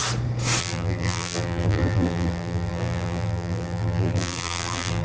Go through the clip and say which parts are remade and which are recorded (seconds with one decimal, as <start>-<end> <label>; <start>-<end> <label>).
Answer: 0.0-0.6 recorded; 0.6-5.0 remade